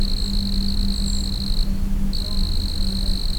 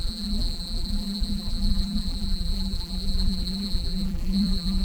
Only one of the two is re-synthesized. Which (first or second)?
second